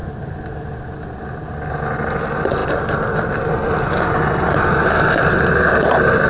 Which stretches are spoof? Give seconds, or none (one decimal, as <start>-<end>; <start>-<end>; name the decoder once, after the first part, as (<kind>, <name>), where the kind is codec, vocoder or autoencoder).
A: none